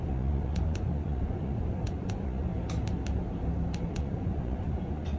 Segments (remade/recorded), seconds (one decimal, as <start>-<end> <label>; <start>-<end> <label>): 0.0-2.5 remade; 2.5-3.9 recorded; 3.9-5.2 remade